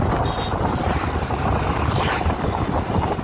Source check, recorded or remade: recorded